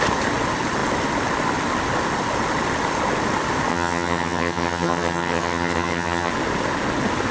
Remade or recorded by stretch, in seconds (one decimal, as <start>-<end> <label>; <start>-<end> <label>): 0.0-3.7 recorded; 3.7-6.3 remade; 6.3-7.3 recorded